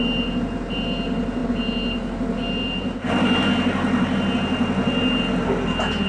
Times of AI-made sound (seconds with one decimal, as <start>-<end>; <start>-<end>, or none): none